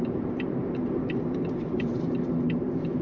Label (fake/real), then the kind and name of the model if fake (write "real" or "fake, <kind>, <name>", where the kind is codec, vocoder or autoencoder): fake, vocoder, BigVGAN v2